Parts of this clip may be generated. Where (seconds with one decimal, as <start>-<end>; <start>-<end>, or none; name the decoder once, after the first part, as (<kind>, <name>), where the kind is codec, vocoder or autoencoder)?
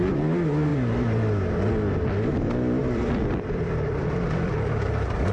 2.8-4.5 (vocoder, BigVGAN v2)